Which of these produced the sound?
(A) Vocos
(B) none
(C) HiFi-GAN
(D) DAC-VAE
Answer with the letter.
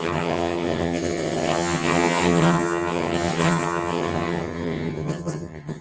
C